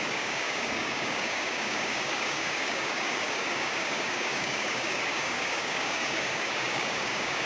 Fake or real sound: fake